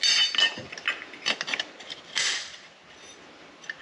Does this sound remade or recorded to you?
recorded